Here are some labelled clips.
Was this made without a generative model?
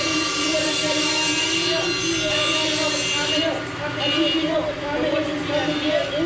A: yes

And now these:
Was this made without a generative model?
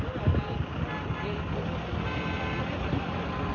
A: yes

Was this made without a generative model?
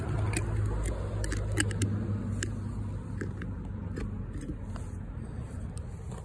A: yes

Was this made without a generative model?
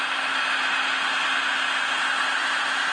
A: yes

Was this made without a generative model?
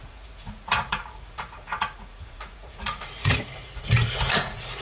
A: no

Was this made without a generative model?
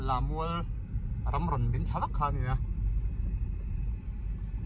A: yes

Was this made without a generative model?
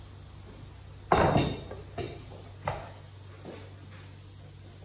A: yes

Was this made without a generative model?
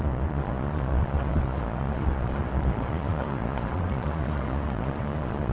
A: no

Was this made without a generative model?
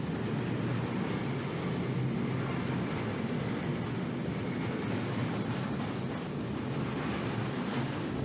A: yes